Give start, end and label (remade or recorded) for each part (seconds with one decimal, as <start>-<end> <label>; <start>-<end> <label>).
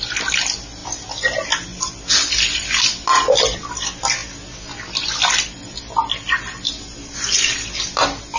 0.0-8.4 recorded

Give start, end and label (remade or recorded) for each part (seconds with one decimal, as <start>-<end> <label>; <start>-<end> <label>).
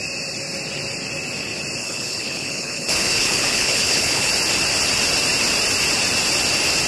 0.0-1.8 recorded; 1.8-4.3 remade; 4.3-6.9 recorded